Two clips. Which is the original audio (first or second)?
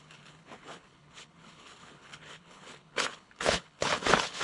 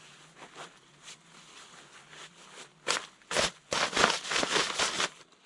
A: second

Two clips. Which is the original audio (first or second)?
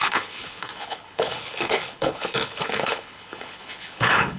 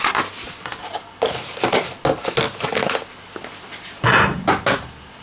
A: second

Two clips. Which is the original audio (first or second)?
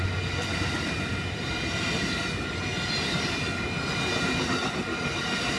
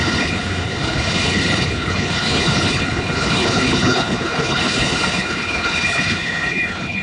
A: first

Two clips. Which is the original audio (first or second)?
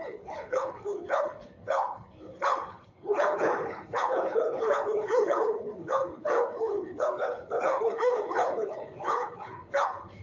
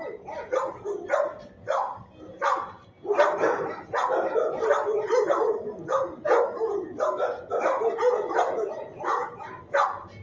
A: second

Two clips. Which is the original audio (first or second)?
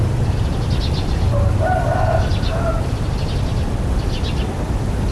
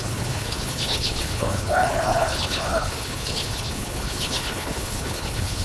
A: first